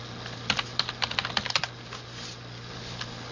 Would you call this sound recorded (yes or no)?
yes